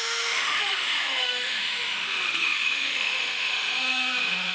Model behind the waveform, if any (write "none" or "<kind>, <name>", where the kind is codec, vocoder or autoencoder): autoencoder, DAC-VAE